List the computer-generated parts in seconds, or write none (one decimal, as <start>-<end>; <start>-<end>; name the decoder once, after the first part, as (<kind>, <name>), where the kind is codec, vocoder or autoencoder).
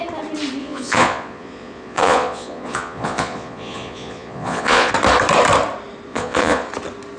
0.6-4.9 (vocoder, Vocos); 6.1-6.7